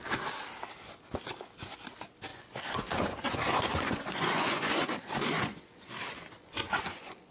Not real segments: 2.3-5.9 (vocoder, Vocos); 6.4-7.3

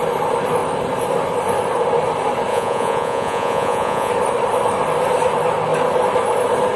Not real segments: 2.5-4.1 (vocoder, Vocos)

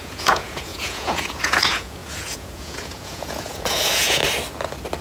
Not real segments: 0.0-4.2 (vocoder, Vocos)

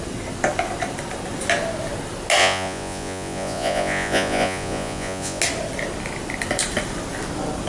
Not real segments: 2.4-5.4 (vocoder, Vocos)

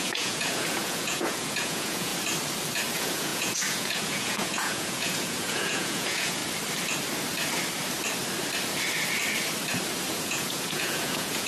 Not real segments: 0.0-2.1 (vocoder, Vocos); 2.9-6.4; 10.1-11.5

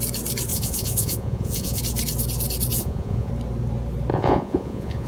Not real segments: 0.5-1.8 (vocoder, Vocos); 2.8-3.3; 4.1-5.1